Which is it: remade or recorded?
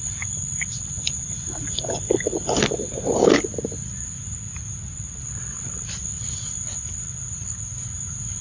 recorded